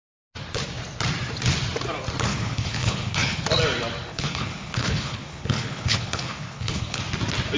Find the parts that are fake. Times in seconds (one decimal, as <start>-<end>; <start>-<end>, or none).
2.3-3.4; 4.1-7.0